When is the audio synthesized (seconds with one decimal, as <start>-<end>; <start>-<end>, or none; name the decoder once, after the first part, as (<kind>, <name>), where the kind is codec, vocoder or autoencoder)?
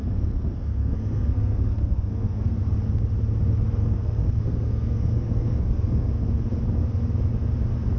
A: 0.0-2.6 (codec, SNAC); 3.8-6.3